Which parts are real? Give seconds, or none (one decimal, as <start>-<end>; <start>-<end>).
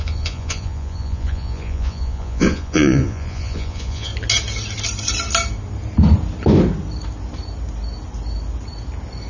4.1-9.3